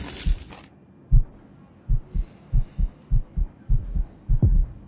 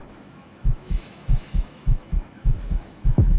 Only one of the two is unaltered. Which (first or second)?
first